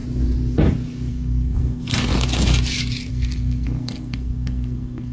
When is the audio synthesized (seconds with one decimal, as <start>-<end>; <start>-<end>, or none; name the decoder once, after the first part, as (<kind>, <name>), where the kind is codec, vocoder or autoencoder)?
1.1-2.1 (codec, SNAC); 3.1-5.1

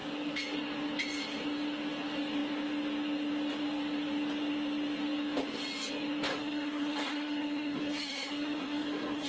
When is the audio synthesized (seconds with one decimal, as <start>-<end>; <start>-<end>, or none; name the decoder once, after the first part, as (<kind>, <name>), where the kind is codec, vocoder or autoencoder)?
6.3-9.3 (codec, SNAC)

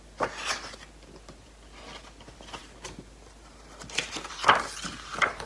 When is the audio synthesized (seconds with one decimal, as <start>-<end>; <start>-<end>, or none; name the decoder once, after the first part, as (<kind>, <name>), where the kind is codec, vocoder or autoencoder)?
none

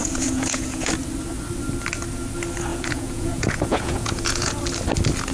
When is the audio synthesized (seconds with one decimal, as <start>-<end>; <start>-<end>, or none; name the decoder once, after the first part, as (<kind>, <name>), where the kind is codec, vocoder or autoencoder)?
0.0-0.9 (vocoder, Vocos); 2.7-4.6

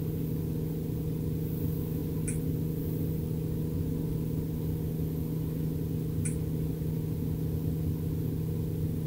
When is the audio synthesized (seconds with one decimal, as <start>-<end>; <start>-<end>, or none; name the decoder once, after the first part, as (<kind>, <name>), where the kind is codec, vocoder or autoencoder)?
none

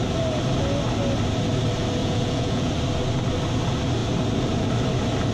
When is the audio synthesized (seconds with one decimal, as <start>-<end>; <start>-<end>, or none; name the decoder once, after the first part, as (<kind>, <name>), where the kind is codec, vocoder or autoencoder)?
2.0-2.7 (vocoder, Vocos)